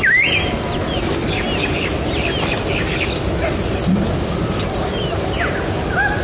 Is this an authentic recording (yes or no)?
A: yes